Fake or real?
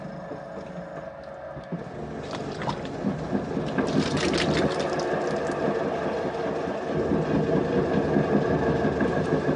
real